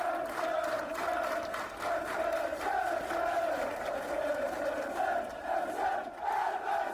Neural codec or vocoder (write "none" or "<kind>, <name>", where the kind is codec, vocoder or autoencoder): none